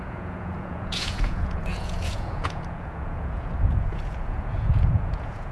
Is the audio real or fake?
fake